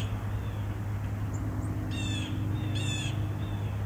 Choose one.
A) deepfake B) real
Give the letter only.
B